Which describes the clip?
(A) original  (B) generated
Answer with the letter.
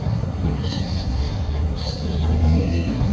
B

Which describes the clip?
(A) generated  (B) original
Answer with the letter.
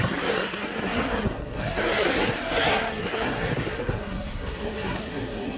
A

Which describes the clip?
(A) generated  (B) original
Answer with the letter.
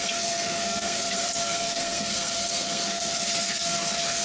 A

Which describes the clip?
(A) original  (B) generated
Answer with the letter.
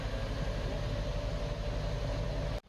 A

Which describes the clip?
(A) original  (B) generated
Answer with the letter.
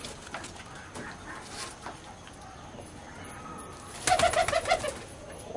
A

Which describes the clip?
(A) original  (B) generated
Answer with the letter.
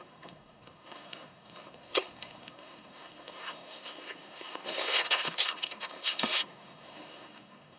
B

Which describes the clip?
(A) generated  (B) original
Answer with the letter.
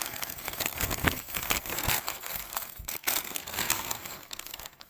A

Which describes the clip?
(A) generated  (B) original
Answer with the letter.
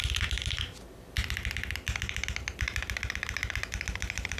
B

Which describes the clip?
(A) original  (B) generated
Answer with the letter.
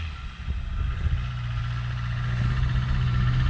A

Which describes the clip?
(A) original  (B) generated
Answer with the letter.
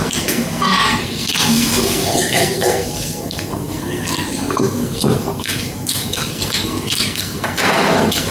B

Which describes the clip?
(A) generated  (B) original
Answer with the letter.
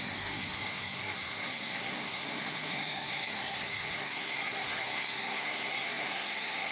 A